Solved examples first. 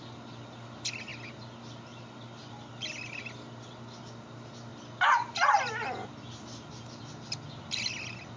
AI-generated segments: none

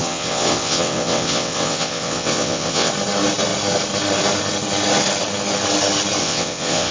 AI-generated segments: 0.0-2.9; 6.2-6.9

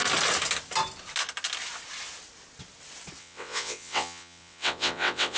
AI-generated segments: 3.2-5.4

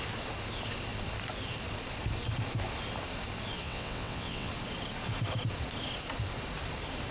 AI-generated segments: 3.6-4.5

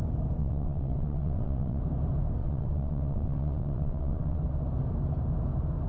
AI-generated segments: 0.4-1.8; 2.4-4.4